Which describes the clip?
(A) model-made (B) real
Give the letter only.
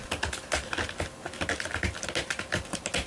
B